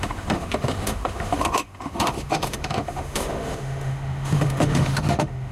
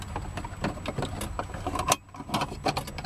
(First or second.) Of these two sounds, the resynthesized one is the first